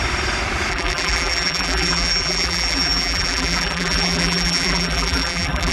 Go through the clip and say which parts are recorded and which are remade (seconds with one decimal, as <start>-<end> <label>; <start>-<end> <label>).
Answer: 0.0-0.7 recorded; 0.7-5.7 remade